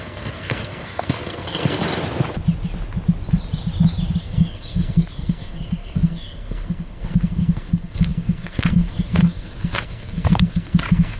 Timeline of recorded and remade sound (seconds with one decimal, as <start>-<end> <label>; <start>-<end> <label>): 0.0-1.8 remade; 1.8-4.2 recorded; 4.2-11.2 remade